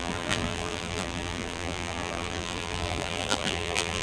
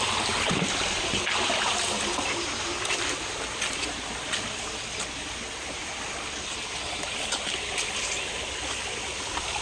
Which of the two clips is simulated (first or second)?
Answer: first